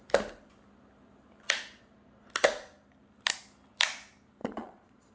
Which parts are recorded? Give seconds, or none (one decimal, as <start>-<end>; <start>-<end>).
0.0-4.4